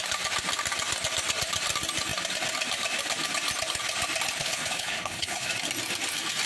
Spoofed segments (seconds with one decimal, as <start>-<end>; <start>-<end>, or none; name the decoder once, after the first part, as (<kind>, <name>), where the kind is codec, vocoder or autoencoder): 4.4-5.5 (codec, HILCodec)